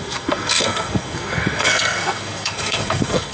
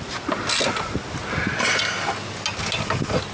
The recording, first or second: second